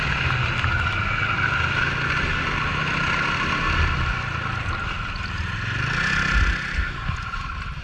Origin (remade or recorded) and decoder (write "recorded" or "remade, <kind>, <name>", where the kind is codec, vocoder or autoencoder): recorded